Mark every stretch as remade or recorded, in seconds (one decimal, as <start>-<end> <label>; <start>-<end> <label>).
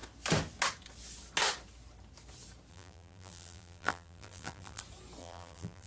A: 0.0-2.7 recorded; 2.7-4.8 remade; 4.8-5.2 recorded; 5.2-5.9 remade